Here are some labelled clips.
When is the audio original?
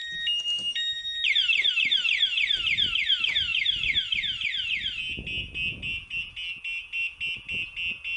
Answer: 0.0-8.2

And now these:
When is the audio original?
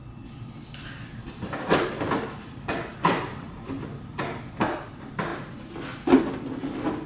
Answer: 0.0-2.9; 4.2-7.1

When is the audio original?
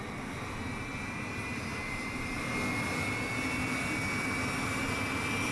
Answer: 0.0-0.7; 2.5-5.5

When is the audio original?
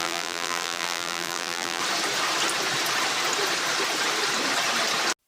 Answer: 1.8-5.3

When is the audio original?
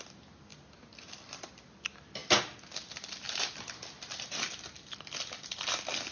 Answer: 0.0-6.1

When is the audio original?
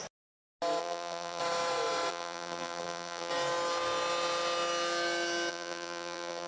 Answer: 0.0-0.8; 1.4-2.1; 3.3-5.5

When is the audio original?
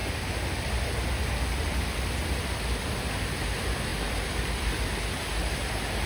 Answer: 1.1-3.9; 4.8-6.1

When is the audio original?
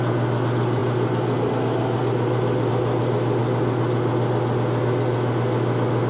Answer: 0.0-6.1